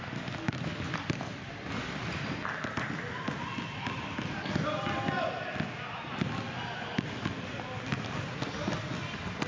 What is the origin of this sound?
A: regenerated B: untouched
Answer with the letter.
B